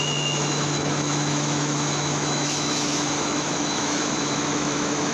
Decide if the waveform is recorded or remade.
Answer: remade